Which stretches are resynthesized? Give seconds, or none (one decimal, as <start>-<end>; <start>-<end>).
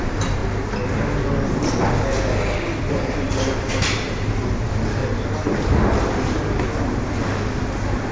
0.0-0.4; 2.8-5.0